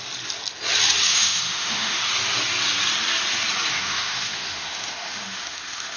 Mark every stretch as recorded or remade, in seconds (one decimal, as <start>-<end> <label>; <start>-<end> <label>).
0.0-1.1 recorded; 1.1-2.0 remade; 2.0-3.7 recorded; 3.7-6.0 remade